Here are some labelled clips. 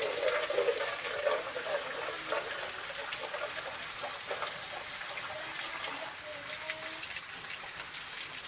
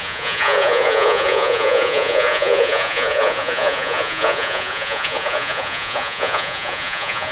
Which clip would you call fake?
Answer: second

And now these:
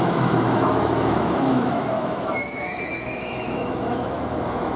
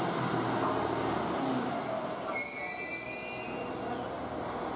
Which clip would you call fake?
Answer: first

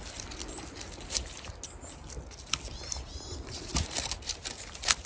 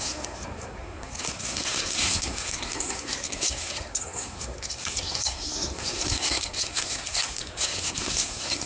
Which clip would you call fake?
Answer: second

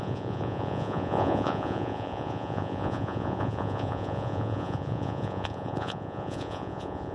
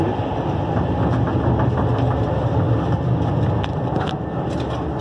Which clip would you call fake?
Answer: first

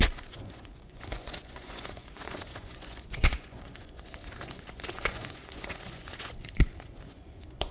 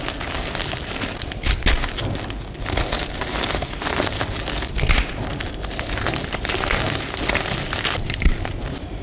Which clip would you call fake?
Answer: first